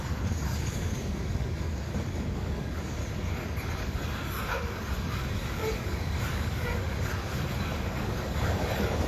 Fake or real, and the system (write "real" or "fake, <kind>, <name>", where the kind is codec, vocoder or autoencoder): fake, codec, DAC